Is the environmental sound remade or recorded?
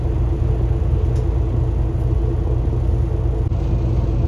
recorded